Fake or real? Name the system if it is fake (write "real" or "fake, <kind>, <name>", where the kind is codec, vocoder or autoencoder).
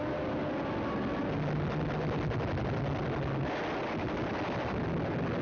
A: real